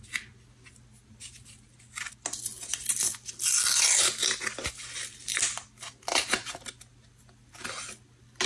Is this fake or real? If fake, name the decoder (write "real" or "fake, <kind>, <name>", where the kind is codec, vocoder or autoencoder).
real